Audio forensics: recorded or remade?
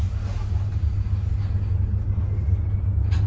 recorded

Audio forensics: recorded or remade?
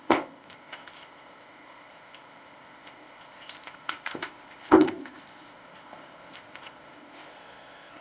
remade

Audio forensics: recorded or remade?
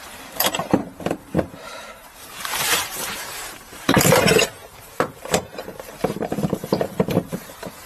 remade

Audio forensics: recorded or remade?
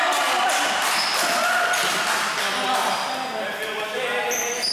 recorded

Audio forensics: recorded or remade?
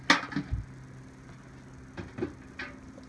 recorded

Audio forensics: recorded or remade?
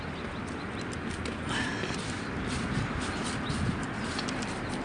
recorded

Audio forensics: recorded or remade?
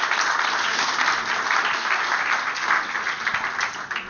recorded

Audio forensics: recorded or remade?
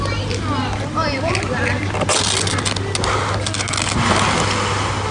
recorded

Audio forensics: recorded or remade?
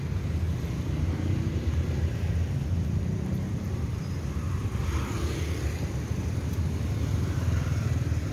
recorded